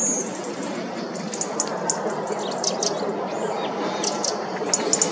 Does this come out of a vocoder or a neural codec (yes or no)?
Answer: no